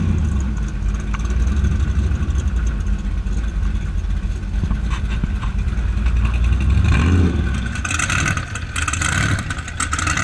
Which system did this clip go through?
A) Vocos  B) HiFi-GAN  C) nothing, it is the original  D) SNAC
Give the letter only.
C